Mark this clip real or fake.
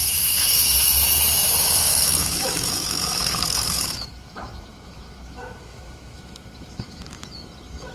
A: fake